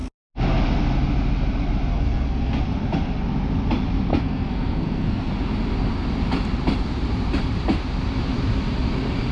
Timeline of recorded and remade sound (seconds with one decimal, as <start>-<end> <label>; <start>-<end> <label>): 0.0-1.9 recorded; 1.9-2.6 remade; 2.6-4.1 recorded; 4.1-5.3 remade; 5.3-9.3 recorded